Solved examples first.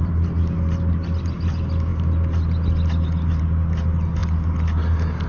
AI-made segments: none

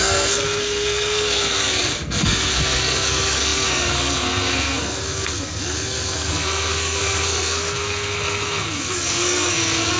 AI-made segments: 0.0-10.0 (codec, SNAC)

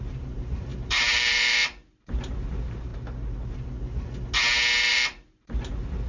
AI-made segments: 0.0-2.9 (vocoder, BigVGAN v2); 4.9-6.1

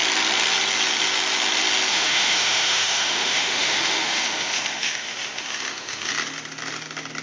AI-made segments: 1.9-6.1 (autoencoder, DAC-VAE)

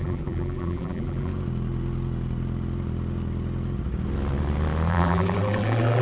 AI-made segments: 0.0-1.3 (vocoder, BigVGAN v2); 4.9-6.0

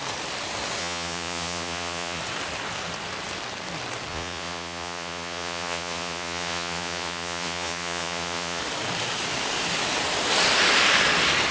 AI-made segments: 0.8-2.2 (vocoder, Vocos); 4.1-8.6

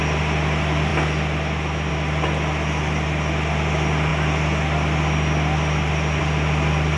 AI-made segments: none